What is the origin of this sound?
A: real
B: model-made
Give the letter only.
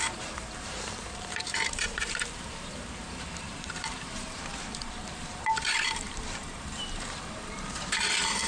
B